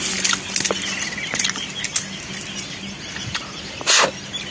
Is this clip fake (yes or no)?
no